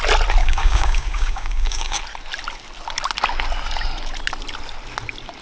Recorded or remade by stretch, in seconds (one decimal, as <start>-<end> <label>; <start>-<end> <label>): 0.0-0.4 recorded; 0.4-2.0 remade; 2.0-5.4 recorded